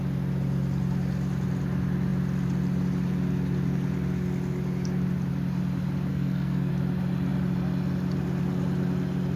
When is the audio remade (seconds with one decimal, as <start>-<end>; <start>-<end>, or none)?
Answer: 6.1-6.7